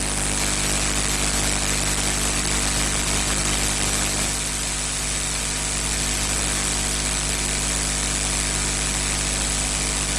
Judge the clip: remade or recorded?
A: recorded